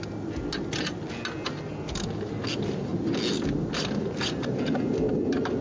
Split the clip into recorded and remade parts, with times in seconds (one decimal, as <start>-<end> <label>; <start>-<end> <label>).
0.0-5.6 recorded